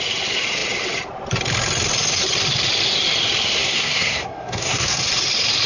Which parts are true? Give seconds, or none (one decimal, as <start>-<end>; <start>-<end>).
0.0-3.5; 5.0-5.7